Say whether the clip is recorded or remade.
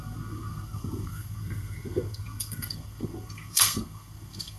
remade